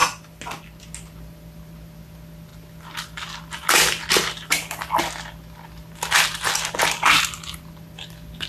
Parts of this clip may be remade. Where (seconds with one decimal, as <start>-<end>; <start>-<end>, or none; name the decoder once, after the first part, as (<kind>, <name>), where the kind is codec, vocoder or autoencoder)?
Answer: none